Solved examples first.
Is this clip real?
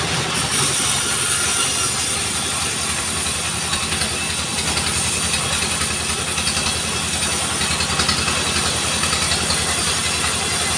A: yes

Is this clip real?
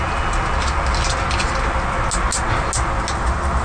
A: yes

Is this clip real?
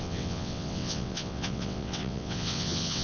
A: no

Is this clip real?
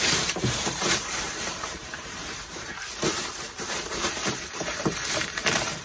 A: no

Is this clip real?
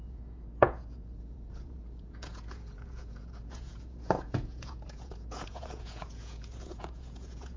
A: no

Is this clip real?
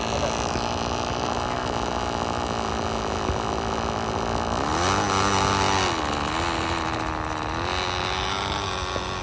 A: yes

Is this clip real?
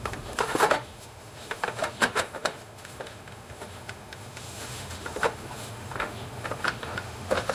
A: no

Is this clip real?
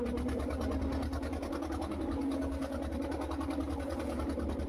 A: yes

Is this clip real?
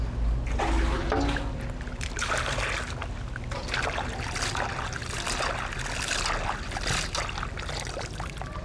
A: yes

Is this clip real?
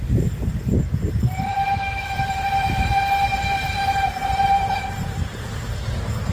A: no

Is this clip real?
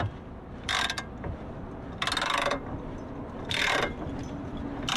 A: yes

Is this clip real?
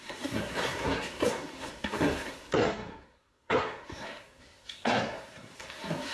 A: no